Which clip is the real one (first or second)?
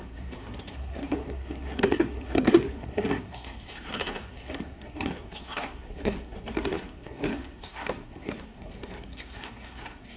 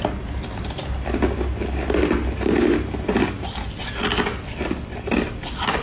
second